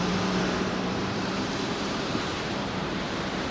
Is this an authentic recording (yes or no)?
no